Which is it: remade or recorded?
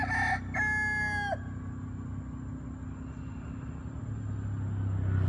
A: recorded